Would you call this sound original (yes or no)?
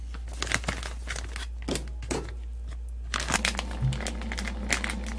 yes